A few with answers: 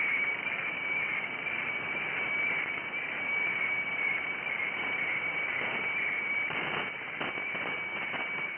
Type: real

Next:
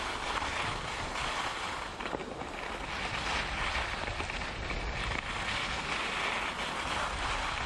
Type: real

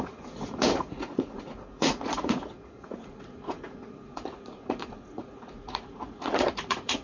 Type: fake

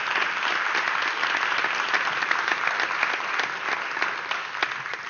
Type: real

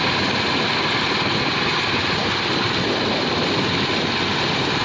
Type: real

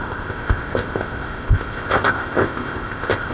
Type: fake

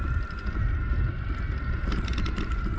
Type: real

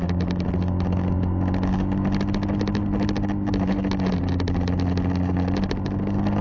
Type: real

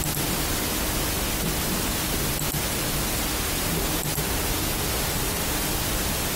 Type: real